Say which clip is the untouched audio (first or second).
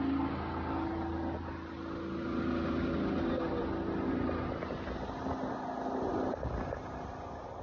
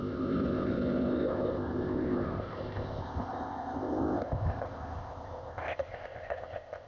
first